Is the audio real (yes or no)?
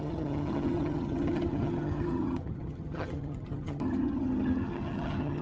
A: no